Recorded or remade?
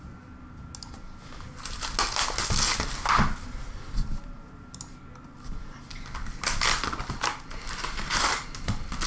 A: recorded